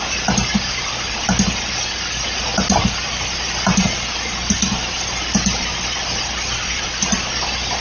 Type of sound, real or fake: real